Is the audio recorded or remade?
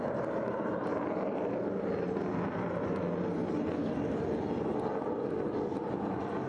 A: recorded